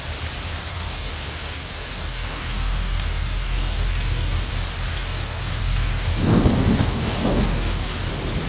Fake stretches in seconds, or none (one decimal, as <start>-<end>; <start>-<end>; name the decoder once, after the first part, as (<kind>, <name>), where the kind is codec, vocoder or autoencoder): 0.7-4.5 (codec, DAC); 4.9-8.1